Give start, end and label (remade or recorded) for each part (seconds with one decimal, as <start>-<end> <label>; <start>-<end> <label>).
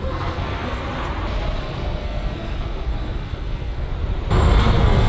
0.0-0.8 remade; 0.8-1.6 recorded; 1.6-3.9 remade; 3.9-4.6 recorded; 4.6-5.1 remade